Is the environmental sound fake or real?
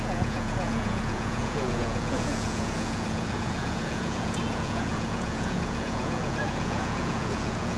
fake